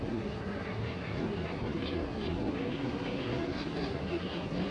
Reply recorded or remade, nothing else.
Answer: remade